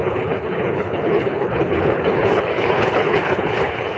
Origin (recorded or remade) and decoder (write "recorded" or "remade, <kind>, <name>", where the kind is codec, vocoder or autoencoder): remade, codec, HILCodec